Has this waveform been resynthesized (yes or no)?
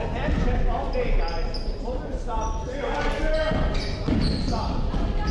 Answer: no